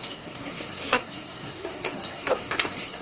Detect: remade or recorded remade